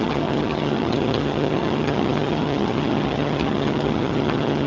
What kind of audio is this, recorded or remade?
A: remade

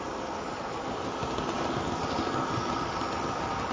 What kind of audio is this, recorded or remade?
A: recorded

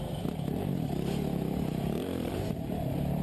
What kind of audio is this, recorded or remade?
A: remade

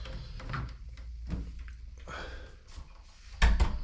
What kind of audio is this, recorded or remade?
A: recorded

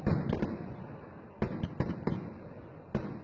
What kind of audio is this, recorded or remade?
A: recorded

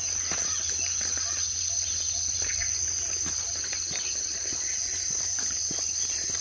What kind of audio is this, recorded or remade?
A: recorded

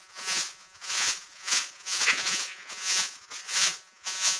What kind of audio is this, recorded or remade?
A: remade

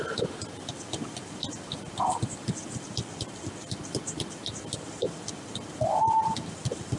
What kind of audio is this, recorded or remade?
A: recorded